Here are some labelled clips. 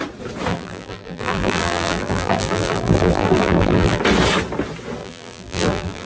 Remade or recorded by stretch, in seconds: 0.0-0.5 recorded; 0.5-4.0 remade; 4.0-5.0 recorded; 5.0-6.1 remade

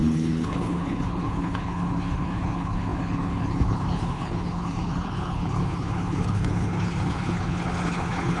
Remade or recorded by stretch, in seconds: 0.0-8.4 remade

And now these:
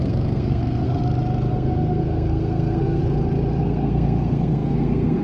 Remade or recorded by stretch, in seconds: 0.0-1.0 remade; 1.0-1.5 recorded; 1.5-3.0 remade; 3.0-3.6 recorded; 3.6-5.2 remade